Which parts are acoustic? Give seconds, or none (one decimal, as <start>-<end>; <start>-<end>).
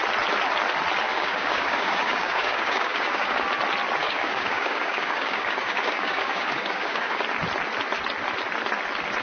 0.0-1.1; 3.4-4.0; 7.2-9.2